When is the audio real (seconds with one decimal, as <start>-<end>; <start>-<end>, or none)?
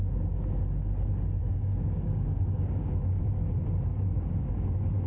0.0-1.4; 3.2-3.9; 4.5-5.1